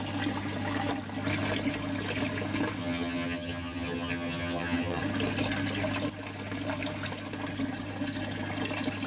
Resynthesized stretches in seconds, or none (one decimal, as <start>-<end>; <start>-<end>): 2.8-5.0